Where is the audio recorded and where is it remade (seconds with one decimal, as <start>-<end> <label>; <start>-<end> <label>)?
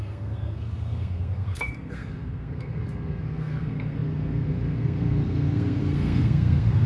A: 0.0-6.9 remade